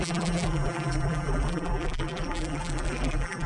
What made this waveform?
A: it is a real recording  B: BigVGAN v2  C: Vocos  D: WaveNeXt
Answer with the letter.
B